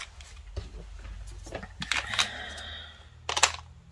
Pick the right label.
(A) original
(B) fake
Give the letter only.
A